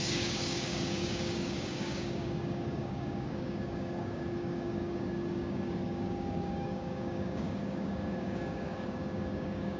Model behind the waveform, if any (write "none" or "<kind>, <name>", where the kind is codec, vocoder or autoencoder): codec, DAC